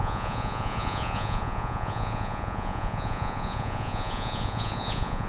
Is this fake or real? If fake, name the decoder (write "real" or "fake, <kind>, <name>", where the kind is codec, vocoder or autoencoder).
fake, vocoder, Vocos